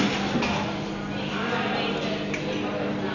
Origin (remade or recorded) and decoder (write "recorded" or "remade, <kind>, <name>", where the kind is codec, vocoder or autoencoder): recorded